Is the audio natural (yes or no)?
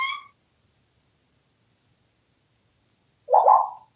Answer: yes